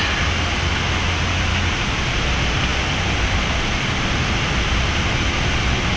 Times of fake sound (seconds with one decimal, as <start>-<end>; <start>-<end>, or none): none